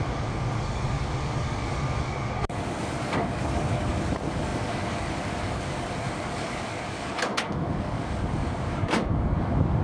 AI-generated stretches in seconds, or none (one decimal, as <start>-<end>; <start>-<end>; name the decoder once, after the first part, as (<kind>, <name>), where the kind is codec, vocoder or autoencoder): 0.0-9.8 (codec, DAC)